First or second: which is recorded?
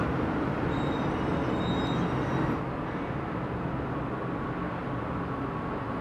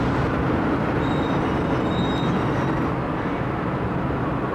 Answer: first